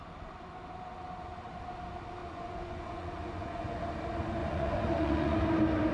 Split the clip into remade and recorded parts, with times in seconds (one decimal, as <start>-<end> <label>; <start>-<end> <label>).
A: 0.0-2.2 recorded; 2.2-3.8 remade; 3.8-4.4 recorded; 4.4-5.4 remade; 5.4-5.9 recorded